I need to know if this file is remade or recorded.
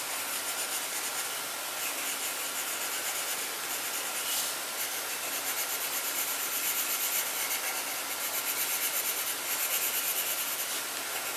recorded